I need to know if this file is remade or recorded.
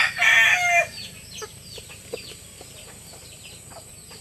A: recorded